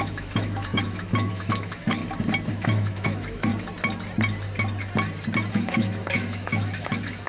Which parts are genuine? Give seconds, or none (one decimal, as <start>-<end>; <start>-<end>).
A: 2.0-2.5; 3.5-5.5